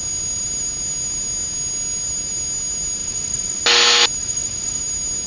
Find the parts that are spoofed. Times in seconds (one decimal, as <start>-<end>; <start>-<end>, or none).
3.0-3.6; 4.2-4.8